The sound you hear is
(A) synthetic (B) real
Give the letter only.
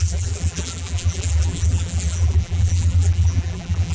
A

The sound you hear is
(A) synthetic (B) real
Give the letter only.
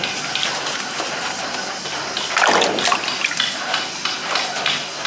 B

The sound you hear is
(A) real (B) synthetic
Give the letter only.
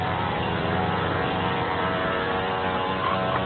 B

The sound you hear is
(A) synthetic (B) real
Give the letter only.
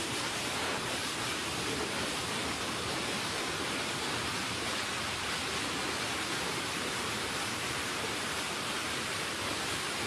A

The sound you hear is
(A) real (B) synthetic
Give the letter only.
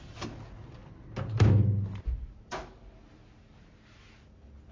A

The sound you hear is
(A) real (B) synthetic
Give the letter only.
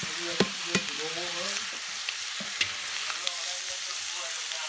A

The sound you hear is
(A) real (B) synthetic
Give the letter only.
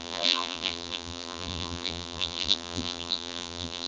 B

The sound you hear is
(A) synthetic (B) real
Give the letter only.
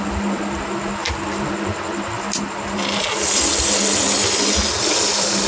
B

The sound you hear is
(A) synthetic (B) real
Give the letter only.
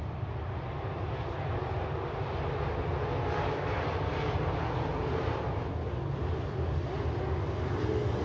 B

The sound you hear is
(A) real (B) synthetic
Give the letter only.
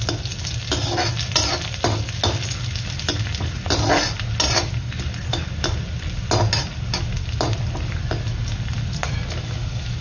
A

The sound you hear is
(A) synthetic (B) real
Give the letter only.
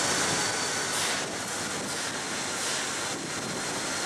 B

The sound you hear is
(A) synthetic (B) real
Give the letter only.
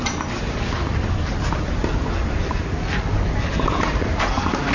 B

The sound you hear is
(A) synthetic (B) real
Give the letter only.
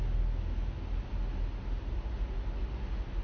B